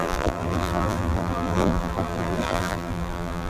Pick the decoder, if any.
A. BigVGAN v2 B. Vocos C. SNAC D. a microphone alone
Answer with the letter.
A